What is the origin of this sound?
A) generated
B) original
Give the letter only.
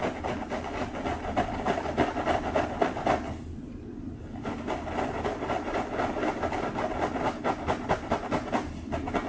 B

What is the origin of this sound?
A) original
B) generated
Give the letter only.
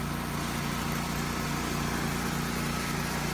A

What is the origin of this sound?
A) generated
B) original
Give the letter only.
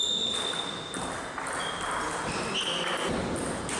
B